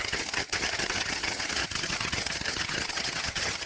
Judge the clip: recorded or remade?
remade